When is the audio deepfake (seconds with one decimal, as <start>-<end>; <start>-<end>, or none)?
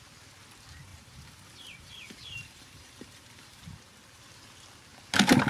0.9-4.2